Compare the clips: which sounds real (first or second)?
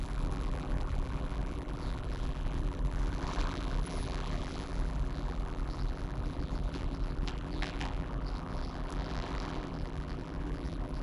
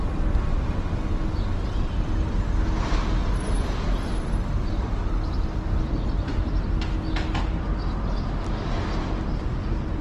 second